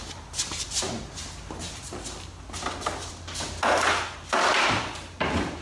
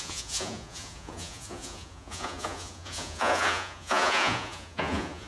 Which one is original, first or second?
first